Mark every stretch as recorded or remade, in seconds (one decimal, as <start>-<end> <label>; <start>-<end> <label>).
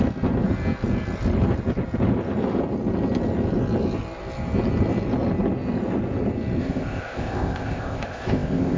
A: 0.0-6.6 recorded; 6.6-8.8 remade